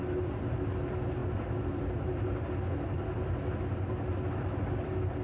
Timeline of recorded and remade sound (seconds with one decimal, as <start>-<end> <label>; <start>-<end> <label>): 0.0-5.2 recorded